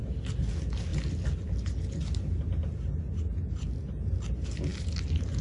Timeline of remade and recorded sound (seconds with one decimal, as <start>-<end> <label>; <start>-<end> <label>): 0.0-5.4 recorded